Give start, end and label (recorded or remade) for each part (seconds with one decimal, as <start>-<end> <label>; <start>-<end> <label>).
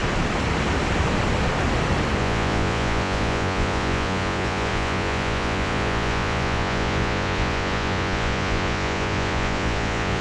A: 0.0-2.2 recorded; 2.2-10.2 remade